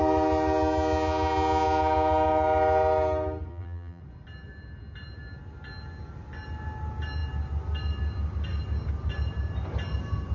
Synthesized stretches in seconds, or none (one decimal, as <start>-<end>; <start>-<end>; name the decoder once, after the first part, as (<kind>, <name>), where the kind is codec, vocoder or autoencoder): 3.5-4.0 (vocoder, BigVGAN v2)